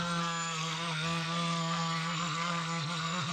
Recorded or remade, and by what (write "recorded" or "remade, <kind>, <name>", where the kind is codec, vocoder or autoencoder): remade, codec, SNAC